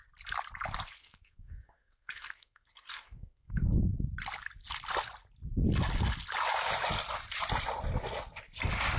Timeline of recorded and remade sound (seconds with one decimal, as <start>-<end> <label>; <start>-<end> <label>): 0.0-1.0 recorded; 1.0-3.8 remade; 3.8-9.0 recorded